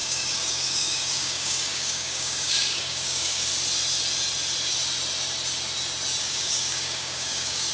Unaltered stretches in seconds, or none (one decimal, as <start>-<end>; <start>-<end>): 3.5-6.2